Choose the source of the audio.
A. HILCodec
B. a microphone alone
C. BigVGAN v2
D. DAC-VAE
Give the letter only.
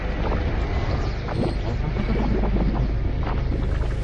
B